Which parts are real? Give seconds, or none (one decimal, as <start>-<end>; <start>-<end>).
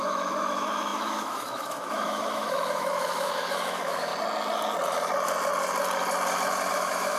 4.1-6.7